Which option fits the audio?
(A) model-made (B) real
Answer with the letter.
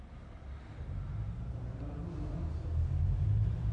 B